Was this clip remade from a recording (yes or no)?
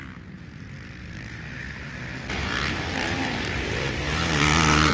no